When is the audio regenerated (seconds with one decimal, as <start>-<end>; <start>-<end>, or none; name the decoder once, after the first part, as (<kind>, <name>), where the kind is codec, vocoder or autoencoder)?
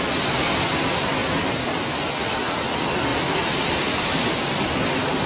3.1-5.3 (vocoder, BigVGAN v2)